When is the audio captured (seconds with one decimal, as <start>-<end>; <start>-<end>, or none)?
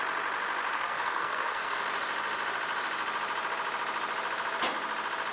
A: 0.0-0.7; 1.8-5.3